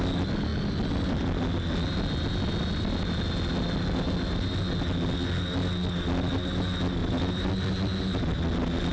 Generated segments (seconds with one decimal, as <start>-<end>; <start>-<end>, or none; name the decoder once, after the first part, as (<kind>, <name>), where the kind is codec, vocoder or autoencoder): 7.0-7.5 (vocoder, BigVGAN v2)